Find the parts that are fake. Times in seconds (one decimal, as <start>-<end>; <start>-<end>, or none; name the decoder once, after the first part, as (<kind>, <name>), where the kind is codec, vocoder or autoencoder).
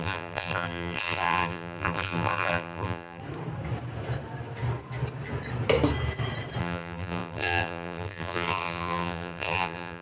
0.0-3.2 (vocoder, BigVGAN v2); 6.6-10.0